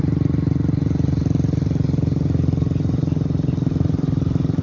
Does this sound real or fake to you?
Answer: real